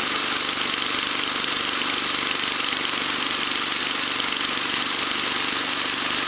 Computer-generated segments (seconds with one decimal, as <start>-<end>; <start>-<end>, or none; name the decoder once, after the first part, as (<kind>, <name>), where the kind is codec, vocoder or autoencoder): none